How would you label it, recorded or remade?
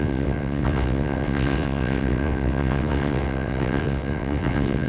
remade